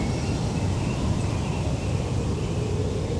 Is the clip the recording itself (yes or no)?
yes